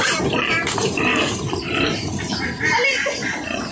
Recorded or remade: remade